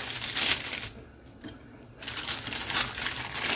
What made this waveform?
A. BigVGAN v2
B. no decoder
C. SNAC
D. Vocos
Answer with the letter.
B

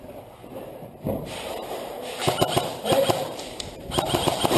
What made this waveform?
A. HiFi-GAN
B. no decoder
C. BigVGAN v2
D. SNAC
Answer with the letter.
C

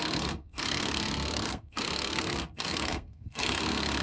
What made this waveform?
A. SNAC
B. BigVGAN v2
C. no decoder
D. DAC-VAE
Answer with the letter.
A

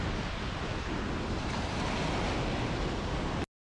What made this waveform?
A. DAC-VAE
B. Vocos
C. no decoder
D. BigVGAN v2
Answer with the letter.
C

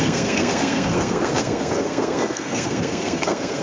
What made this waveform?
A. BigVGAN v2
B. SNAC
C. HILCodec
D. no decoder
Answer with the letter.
B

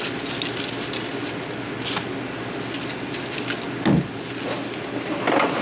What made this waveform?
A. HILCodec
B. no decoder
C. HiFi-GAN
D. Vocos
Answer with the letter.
B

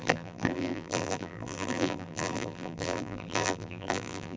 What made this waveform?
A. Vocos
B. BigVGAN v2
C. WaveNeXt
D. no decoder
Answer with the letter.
B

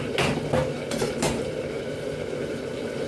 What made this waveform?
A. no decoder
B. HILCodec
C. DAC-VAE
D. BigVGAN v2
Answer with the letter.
A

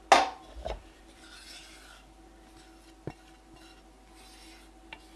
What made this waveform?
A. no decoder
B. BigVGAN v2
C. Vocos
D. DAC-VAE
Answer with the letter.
A